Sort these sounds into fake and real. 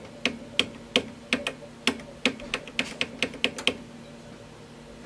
real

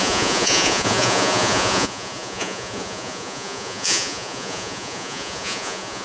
fake